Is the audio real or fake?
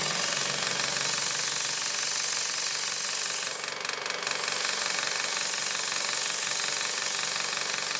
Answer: real